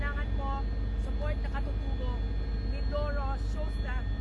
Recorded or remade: recorded